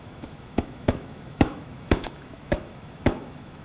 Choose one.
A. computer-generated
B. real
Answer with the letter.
A